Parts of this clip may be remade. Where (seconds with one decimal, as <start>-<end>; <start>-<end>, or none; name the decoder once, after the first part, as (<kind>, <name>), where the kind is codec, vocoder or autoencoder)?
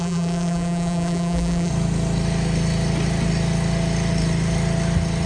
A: 0.0-1.7 (vocoder, BigVGAN v2)